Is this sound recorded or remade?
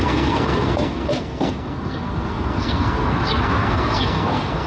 remade